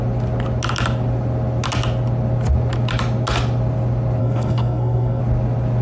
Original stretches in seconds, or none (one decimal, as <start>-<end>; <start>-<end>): 0.0-4.2; 5.2-5.8